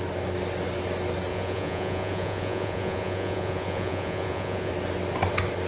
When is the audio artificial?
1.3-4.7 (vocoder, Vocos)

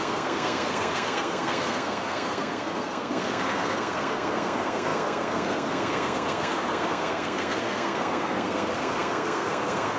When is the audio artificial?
0.0-10.0 (codec, SNAC)